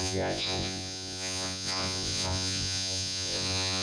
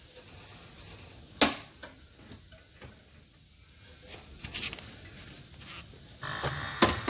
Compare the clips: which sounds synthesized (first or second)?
first